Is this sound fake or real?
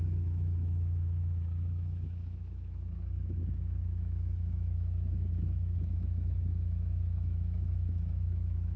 fake